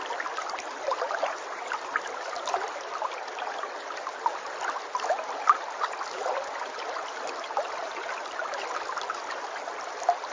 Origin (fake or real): real